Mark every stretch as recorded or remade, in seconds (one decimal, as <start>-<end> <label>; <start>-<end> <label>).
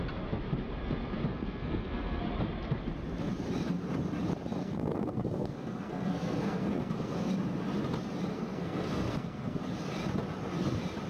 0.0-1.3 recorded; 1.3-2.2 remade; 2.2-4.6 recorded; 4.6-7.3 remade; 7.3-8.3 recorded; 8.3-9.6 remade; 9.6-11.1 recorded